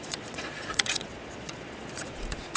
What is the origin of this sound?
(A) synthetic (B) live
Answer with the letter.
A